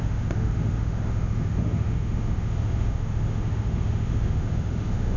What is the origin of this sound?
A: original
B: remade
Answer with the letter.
B